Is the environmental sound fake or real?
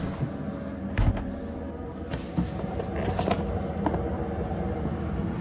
real